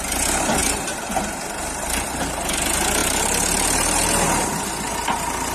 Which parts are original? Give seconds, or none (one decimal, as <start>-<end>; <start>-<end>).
0.0-0.6; 1.2-3.0; 4.6-5.5